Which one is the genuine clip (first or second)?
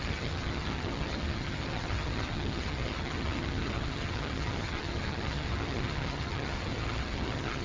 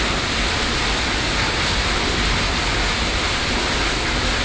second